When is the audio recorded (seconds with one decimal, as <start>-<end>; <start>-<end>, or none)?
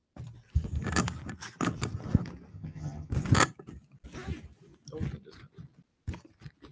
0.0-2.5; 3.1-6.7